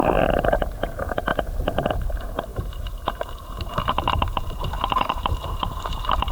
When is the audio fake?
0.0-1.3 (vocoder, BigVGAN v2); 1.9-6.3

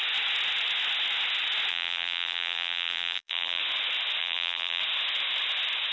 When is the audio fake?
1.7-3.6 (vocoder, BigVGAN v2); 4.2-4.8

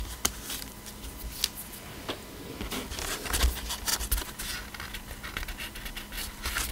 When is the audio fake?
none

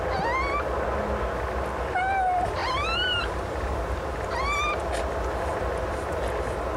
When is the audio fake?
2.6-4.3 (vocoder, BigVGAN v2)